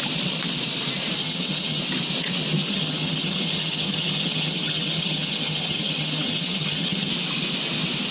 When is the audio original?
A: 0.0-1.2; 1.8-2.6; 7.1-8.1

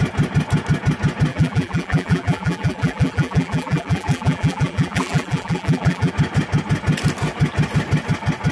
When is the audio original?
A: 0.0-1.3; 6.1-8.5

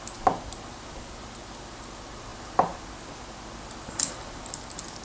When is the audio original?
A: 0.0-5.0

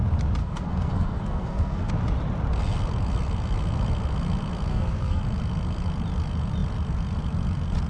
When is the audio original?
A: 0.0-0.4; 1.9-4.7; 5.2-7.9

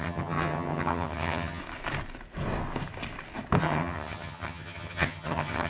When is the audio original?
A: 1.6-3.6

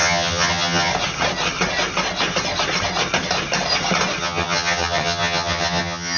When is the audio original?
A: 0.9-4.2